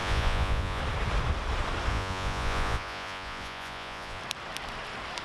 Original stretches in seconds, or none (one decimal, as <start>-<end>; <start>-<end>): 0.8-1.9; 4.2-5.2